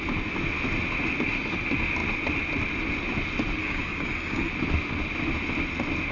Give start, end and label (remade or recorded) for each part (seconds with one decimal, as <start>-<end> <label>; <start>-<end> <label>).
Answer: 0.0-3.6 recorded; 3.6-4.5 remade; 4.5-6.1 recorded

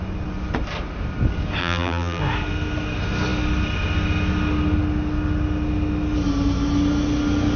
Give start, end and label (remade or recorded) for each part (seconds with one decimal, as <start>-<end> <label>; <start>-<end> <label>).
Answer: 0.0-1.6 recorded; 1.6-2.2 remade; 2.2-7.6 recorded

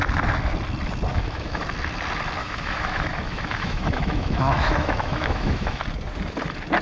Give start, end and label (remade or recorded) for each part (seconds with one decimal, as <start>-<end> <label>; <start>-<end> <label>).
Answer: 0.0-1.1 recorded; 1.1-1.6 remade; 1.6-2.4 recorded; 2.4-5.8 remade; 5.8-6.8 recorded

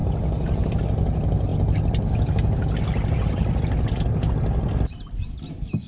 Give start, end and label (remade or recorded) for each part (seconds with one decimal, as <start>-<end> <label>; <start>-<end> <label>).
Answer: 0.0-5.9 recorded